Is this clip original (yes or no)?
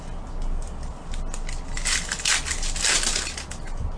yes